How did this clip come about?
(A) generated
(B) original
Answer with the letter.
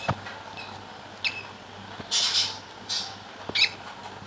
B